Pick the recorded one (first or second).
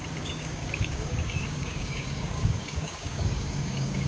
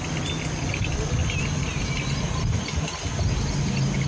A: second